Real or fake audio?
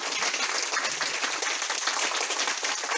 real